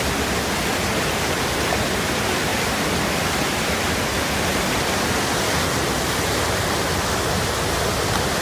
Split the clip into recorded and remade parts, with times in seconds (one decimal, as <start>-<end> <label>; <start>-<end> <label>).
0.0-2.5 recorded; 2.5-7.5 remade; 7.5-8.4 recorded